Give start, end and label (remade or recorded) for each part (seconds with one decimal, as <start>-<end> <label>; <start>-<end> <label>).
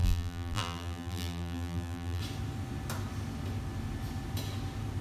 0.0-2.2 remade; 2.2-5.0 recorded